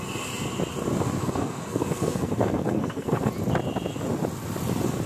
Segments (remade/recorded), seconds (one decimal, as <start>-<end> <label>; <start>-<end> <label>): 0.0-1.2 recorded; 1.2-3.3 remade; 3.3-5.1 recorded